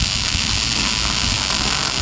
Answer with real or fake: real